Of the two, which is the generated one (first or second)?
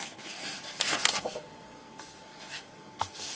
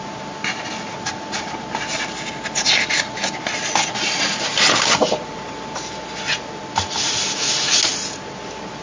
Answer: first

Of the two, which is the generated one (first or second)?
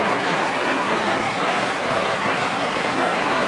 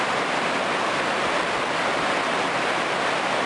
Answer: first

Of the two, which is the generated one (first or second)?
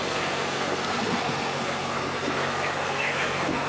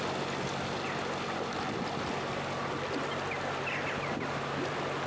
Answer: first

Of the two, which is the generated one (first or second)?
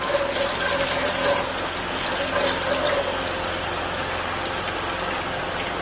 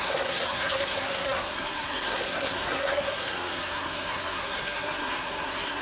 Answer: second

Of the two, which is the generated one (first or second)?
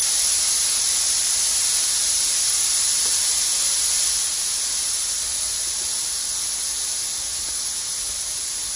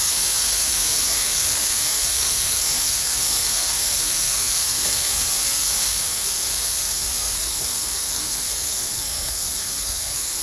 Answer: second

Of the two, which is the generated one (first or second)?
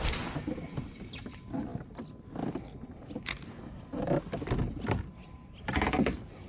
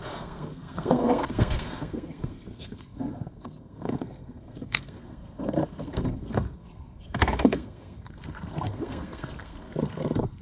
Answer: second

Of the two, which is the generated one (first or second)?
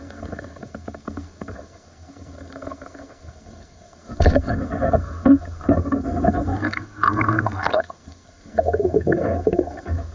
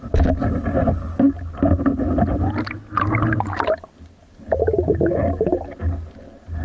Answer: first